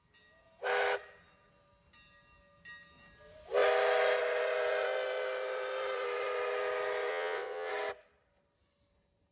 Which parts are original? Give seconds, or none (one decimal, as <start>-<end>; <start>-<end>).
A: 0.0-7.1; 7.7-9.3

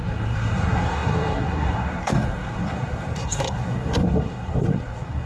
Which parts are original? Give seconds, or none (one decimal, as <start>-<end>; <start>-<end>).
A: none